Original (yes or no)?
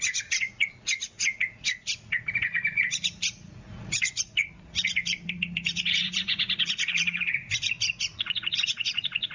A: no